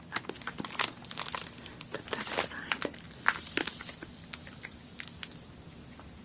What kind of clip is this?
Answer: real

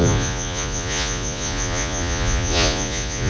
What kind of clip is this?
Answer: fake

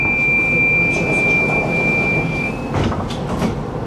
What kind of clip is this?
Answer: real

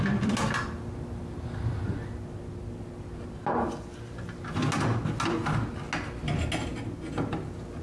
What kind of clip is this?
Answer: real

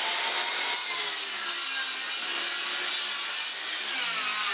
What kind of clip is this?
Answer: real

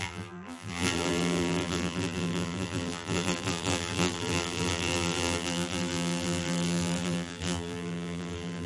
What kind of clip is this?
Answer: fake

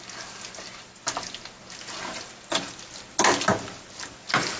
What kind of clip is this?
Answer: real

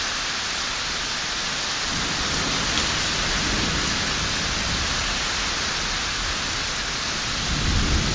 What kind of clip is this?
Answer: real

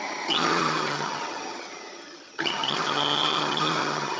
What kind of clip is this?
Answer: fake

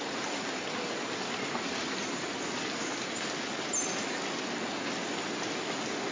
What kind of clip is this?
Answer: real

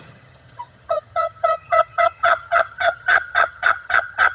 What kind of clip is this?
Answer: fake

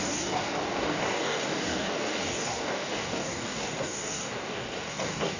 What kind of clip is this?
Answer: fake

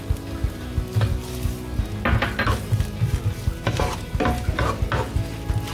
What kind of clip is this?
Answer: real